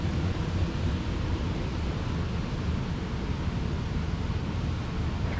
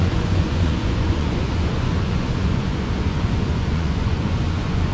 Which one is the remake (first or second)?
second